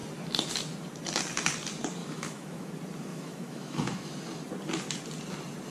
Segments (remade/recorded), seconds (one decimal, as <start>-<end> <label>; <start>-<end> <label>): 0.0-2.0 recorded; 2.0-2.7 remade; 2.7-3.1 recorded; 3.1-4.1 remade; 4.1-5.7 recorded